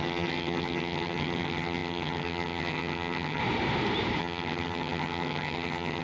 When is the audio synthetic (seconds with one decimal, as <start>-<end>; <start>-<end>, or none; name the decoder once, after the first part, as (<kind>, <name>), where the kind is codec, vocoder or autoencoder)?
0.0-3.4 (vocoder, HiFi-GAN); 4.2-6.0